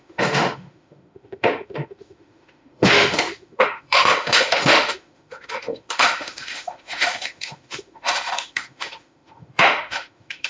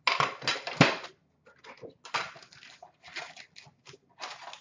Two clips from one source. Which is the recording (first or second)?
second